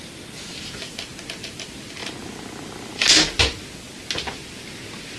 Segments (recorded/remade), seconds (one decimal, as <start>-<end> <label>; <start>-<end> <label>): 0.0-5.2 recorded